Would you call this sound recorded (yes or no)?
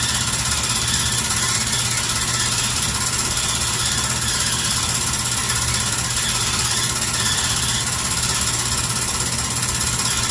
yes